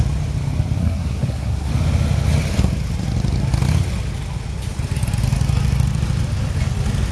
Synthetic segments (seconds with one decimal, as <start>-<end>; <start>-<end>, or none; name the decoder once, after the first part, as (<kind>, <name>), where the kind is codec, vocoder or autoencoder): 0.8-1.7 (codec, SNAC)